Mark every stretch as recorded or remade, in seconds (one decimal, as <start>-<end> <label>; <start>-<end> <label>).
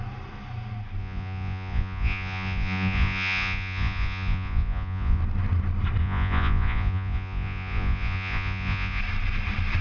0.0-1.0 recorded; 1.0-5.2 remade; 5.2-6.0 recorded; 6.0-9.0 remade; 9.0-9.8 recorded